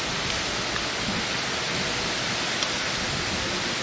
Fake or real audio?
real